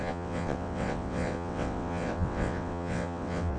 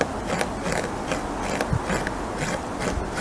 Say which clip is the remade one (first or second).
first